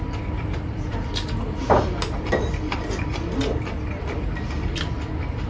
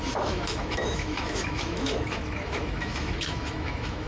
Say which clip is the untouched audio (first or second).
first